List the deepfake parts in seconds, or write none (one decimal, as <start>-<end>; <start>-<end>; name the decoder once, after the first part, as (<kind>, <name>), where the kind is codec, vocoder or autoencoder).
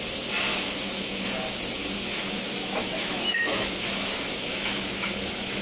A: 0.5-1.2 (autoencoder, DAC-VAE); 1.8-5.6